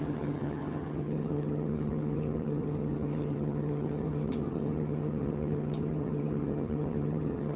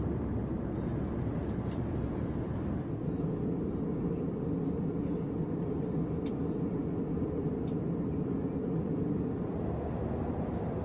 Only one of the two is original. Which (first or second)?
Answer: second